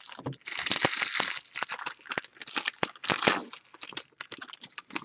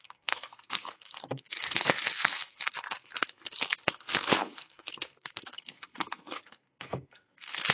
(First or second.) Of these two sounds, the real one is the first